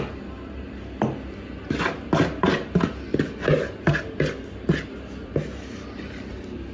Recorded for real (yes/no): yes